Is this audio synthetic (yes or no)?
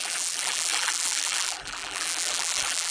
yes